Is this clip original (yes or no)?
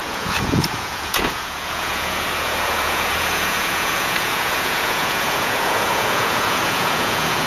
no